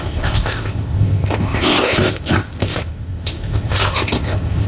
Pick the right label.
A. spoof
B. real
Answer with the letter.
A